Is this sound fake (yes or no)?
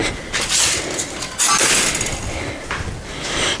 no